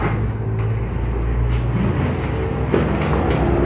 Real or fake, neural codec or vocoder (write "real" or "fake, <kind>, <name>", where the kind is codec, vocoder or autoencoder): real